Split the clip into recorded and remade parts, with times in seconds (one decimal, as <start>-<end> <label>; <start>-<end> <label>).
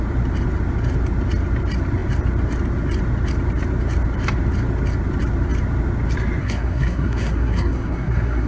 0.0-6.4 recorded; 6.4-8.5 remade